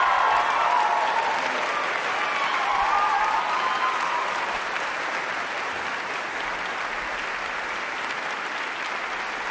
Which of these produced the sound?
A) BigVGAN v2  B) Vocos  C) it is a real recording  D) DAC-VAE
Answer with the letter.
C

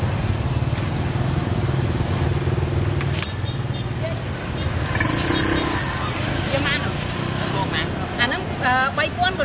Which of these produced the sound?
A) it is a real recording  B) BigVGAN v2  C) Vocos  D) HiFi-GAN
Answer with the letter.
A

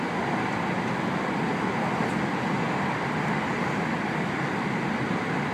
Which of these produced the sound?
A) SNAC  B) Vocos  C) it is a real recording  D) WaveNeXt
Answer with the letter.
C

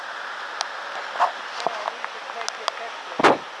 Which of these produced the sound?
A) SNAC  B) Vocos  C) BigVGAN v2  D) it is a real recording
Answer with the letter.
D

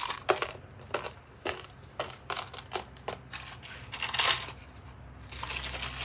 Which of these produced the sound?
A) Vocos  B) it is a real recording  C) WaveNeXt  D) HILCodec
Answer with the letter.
B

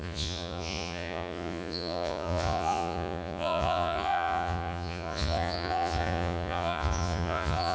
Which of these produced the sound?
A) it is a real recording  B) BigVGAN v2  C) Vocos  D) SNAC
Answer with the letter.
C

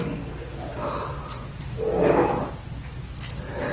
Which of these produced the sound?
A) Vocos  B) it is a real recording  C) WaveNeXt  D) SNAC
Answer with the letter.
B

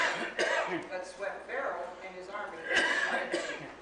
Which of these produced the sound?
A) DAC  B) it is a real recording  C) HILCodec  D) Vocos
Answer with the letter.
D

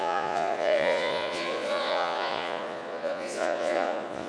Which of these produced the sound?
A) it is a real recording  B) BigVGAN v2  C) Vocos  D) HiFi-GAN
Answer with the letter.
C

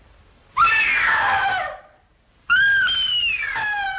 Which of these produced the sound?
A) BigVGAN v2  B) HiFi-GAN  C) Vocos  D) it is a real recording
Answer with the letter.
D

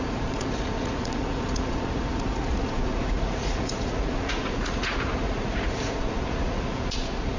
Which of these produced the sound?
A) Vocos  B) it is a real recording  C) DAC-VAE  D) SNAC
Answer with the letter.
A